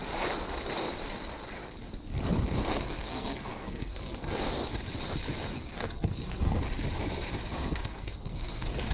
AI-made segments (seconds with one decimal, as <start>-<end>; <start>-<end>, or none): 2.7-4.4; 5.5-6.6; 7.6-8.9